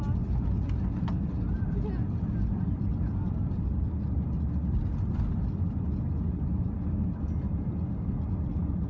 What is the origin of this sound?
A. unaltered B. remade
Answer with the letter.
A